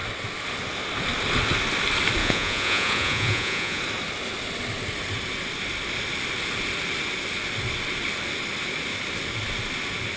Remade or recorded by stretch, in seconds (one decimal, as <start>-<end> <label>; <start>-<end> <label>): 0.0-2.2 recorded; 2.2-3.8 remade; 3.8-10.2 recorded